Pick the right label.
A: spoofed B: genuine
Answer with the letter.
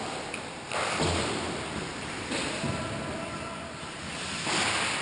B